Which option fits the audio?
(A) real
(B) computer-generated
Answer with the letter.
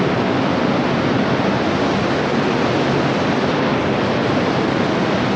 A